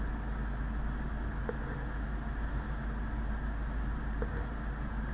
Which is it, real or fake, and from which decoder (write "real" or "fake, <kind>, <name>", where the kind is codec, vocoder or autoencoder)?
real